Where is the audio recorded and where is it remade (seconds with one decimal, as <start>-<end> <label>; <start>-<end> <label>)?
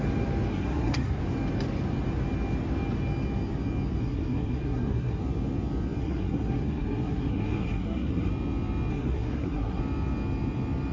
0.0-0.5 recorded; 0.5-1.2 remade; 1.2-4.0 recorded; 4.0-5.2 remade; 5.2-6.0 recorded; 6.0-8.3 remade; 8.3-8.9 recorded; 8.9-9.8 remade; 9.8-10.9 recorded